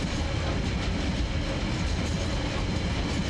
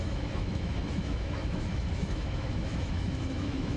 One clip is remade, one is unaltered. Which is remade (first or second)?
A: second